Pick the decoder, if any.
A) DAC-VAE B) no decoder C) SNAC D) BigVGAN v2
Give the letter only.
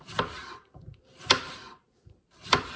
D